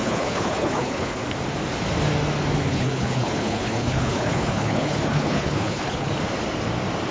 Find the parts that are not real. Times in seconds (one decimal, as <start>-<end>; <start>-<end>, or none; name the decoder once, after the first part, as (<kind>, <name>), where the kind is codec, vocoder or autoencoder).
0.0-1.2 (codec, HILCodec); 2.7-6.1